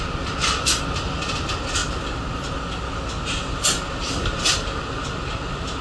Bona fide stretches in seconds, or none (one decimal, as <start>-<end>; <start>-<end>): 0.0-5.8